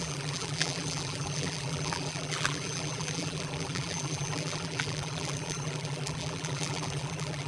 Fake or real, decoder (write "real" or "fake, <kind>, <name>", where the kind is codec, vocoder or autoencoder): fake, vocoder, BigVGAN v2